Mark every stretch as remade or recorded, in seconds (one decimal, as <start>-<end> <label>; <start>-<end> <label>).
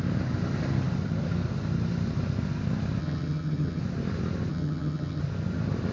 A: 0.0-3.0 recorded; 3.0-3.8 remade; 3.8-4.5 recorded; 4.5-5.2 remade; 5.2-5.9 recorded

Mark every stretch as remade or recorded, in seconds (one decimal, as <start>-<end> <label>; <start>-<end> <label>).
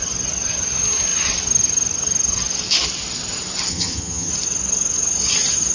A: 0.0-3.7 recorded; 3.7-4.3 remade; 4.3-5.7 recorded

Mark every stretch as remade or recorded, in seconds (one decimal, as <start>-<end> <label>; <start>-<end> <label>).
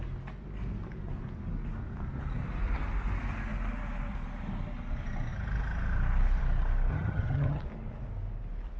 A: 0.0-6.9 recorded; 6.9-7.6 remade; 7.6-8.8 recorded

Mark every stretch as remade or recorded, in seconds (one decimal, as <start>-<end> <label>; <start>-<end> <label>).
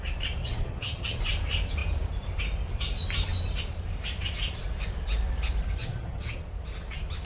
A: 0.0-0.4 recorded; 0.4-1.2 remade; 1.2-5.8 recorded; 5.8-6.4 remade; 6.4-7.2 recorded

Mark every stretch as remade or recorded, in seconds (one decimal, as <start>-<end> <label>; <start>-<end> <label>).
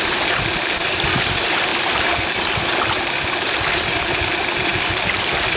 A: 0.0-5.6 recorded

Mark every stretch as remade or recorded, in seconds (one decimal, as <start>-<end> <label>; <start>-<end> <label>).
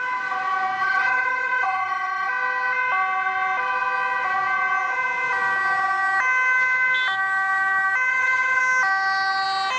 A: 0.0-0.8 recorded; 0.8-2.3 remade; 2.3-8.1 recorded; 8.1-8.6 remade; 8.6-9.8 recorded